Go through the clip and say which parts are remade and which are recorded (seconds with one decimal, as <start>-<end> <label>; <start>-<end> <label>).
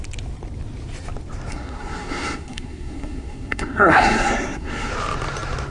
0.0-1.5 recorded; 1.5-4.9 remade; 4.9-5.7 recorded